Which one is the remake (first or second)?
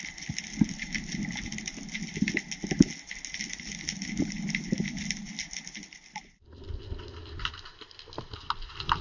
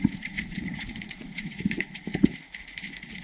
second